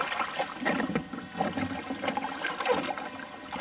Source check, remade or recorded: recorded